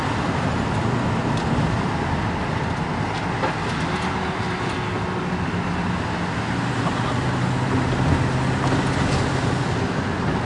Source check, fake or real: real